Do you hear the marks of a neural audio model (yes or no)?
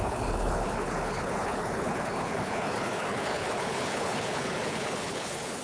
yes